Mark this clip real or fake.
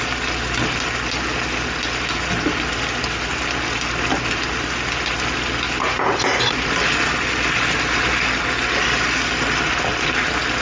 real